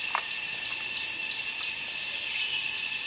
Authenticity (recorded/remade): recorded